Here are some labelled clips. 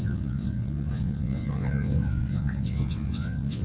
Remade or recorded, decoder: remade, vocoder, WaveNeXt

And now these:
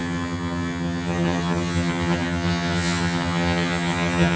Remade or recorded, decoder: remade, vocoder, HiFi-GAN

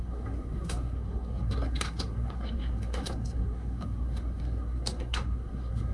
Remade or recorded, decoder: remade, codec, SNAC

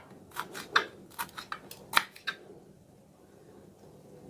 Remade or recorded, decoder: recorded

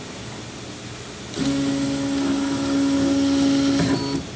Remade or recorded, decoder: recorded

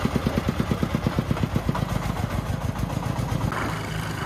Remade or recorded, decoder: recorded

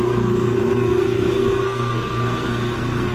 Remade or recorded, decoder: remade, codec, SNAC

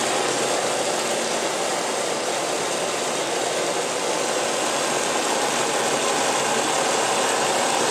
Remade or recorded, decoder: recorded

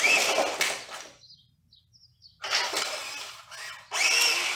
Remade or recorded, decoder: recorded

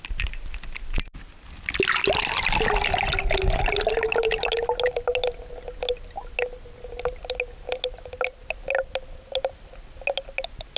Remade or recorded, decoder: recorded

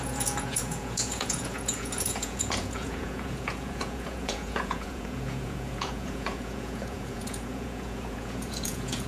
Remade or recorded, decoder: remade, vocoder, Vocos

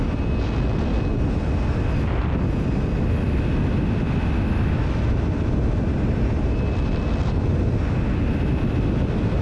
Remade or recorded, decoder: recorded